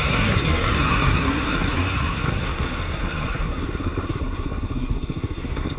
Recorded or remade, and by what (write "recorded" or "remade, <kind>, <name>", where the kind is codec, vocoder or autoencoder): remade, codec, SNAC